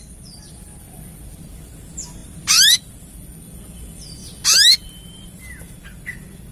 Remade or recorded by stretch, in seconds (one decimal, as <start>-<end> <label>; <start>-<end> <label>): 0.0-6.5 recorded